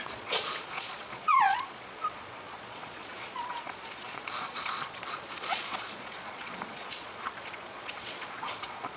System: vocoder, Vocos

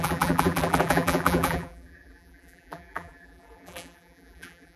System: vocoder, BigVGAN v2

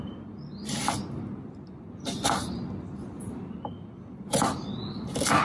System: none